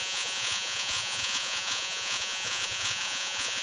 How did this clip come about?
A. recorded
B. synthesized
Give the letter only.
B